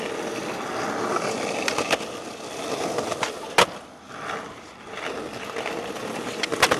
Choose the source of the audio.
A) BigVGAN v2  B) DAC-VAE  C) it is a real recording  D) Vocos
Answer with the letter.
C